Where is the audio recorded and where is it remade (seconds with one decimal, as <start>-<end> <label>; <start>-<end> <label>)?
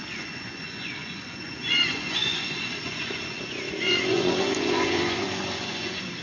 0.0-6.2 remade